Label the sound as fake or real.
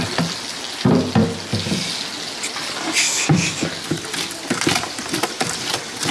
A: real